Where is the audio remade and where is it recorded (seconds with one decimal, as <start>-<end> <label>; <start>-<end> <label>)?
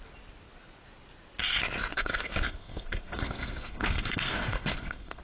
0.0-1.9 recorded; 1.9-5.2 remade